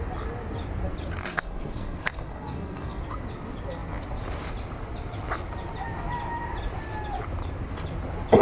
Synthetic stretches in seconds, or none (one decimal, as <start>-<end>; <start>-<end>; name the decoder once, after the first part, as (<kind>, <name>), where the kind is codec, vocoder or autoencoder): 1.2-3.0 (codec, SNAC)

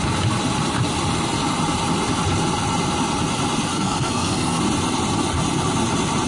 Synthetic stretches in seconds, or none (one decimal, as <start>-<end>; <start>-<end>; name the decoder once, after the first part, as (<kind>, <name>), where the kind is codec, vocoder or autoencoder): 3.7-4.6 (codec, SNAC)

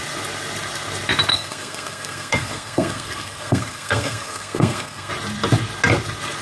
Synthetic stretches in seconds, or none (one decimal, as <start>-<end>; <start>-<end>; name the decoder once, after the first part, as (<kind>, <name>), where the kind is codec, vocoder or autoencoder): 1.3-5.1 (codec, SNAC)

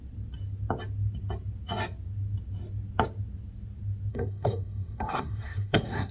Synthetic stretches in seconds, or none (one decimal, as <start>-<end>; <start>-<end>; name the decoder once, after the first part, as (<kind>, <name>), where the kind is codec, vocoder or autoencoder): 4.1-6.1 (codec, SNAC)

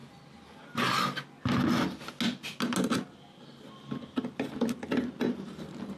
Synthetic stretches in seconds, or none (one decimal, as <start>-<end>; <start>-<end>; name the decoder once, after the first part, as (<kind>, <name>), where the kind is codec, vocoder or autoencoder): none

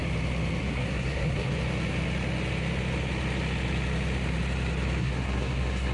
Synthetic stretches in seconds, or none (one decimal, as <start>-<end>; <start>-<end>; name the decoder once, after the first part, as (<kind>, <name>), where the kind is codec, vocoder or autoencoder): 0.6-1.5 (codec, SNAC); 5.0-5.9